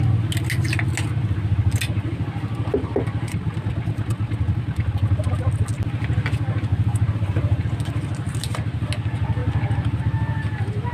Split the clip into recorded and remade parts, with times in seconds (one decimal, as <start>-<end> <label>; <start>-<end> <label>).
0.0-6.7 recorded; 6.7-7.6 remade; 7.6-10.9 recorded